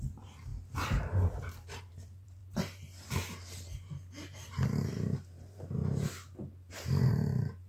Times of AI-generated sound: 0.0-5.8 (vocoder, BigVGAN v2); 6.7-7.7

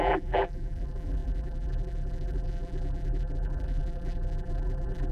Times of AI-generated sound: 0.0-5.1 (vocoder, BigVGAN v2)

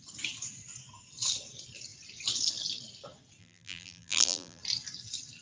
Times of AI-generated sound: 3.4-4.6 (vocoder, BigVGAN v2)